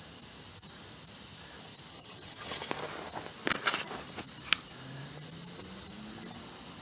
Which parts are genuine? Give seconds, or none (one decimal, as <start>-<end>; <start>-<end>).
0.0-1.9; 2.7-6.8